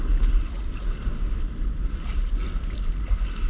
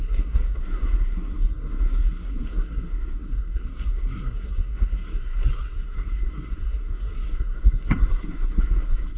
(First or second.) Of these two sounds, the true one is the first